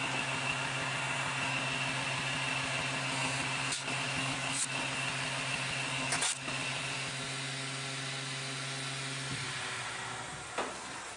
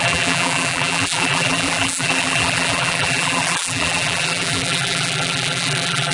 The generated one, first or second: second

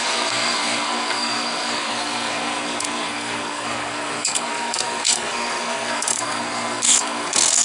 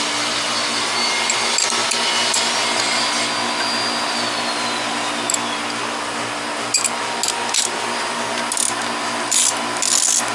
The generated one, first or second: first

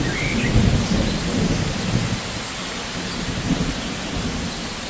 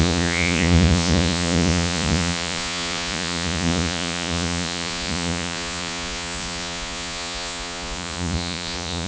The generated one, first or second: second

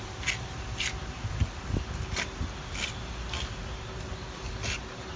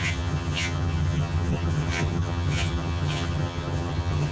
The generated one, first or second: second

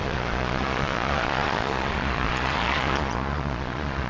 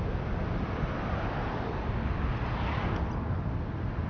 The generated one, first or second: first